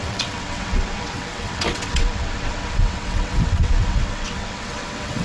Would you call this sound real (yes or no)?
no